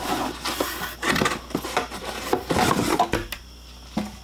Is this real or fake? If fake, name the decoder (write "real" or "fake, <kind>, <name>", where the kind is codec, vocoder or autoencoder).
real